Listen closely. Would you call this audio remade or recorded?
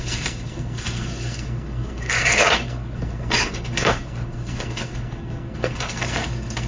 remade